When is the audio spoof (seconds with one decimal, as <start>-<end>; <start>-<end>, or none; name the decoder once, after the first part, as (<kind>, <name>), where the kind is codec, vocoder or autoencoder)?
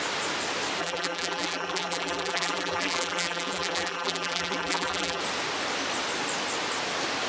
0.8-5.2 (vocoder, BigVGAN v2)